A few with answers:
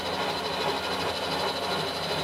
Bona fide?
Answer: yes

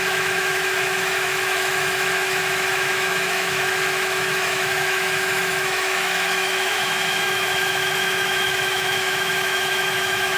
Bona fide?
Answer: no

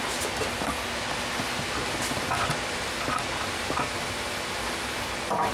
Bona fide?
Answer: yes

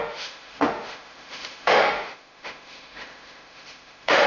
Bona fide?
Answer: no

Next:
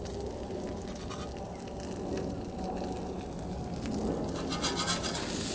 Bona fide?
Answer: yes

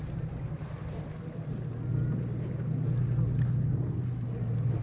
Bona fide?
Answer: yes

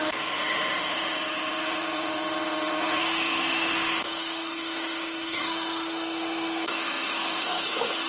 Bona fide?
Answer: no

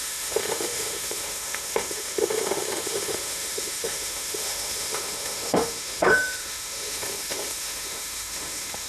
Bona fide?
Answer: no